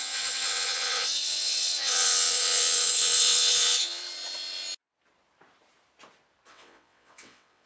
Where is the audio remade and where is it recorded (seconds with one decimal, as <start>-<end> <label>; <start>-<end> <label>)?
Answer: 0.0-4.0 remade; 4.0-6.5 recorded; 6.5-7.7 remade